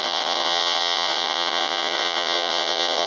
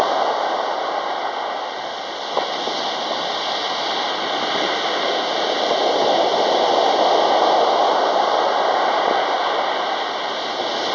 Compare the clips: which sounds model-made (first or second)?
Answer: first